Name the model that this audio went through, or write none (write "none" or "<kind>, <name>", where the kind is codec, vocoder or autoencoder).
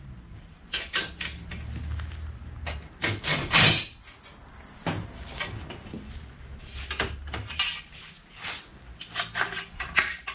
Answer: none